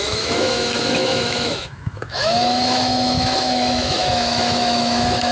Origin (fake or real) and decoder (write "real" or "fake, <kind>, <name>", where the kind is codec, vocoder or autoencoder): fake, autoencoder, DAC-VAE